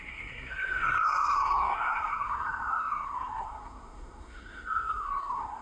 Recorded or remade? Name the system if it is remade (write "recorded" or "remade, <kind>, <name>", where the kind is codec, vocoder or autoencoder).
remade, codec, SNAC